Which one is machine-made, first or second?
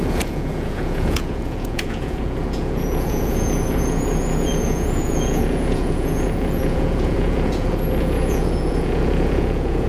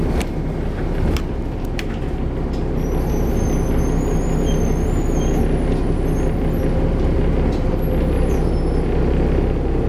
first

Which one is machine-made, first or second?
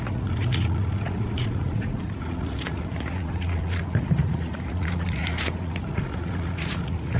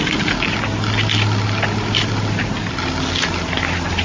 first